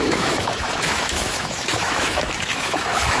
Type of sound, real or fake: fake